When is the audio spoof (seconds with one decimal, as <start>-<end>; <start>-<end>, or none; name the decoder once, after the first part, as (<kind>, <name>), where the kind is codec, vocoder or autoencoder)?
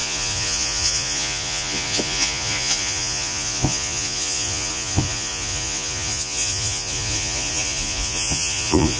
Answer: 0.0-9.0 (vocoder, Vocos)